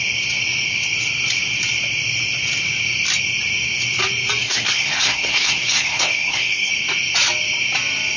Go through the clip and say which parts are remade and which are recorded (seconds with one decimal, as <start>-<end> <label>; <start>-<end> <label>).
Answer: 0.0-4.4 recorded; 4.4-6.7 remade; 6.7-8.2 recorded